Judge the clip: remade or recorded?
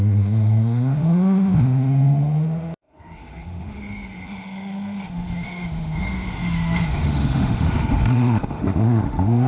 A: remade